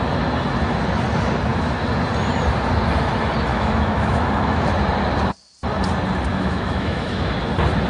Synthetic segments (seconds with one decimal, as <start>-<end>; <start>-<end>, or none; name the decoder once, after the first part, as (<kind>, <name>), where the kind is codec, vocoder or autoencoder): 3.5-4.7 (autoencoder, DAC-VAE); 6.3-7.3